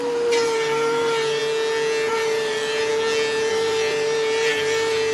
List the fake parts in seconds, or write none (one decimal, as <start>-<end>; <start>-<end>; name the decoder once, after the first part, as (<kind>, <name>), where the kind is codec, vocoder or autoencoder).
0.0-1.4 (vocoder, BigVGAN v2); 2.1-2.9; 3.5-5.1